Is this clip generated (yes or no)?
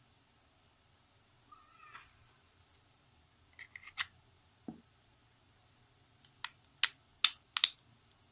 no